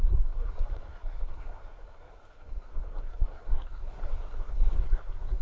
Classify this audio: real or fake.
fake